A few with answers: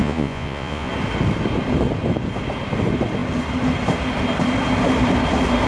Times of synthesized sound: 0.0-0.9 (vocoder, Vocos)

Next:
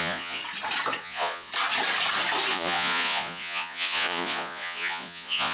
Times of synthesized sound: 0.0-0.4 (vocoder, Vocos); 1.0-1.5; 2.5-5.5

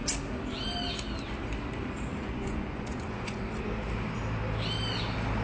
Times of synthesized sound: 2.1-3.4 (vocoder, Vocos)

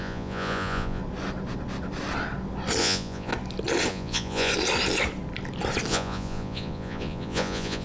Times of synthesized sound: 0.0-1.0 (vocoder, Vocos); 2.8-3.3; 3.9-4.5; 5.9-7.8

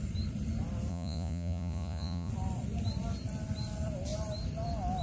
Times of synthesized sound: 0.9-2.3 (vocoder, Vocos)

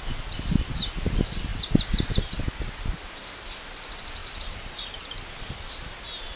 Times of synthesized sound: none

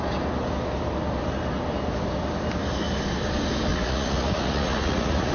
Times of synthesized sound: 3.7-5.3 (vocoder, Vocos)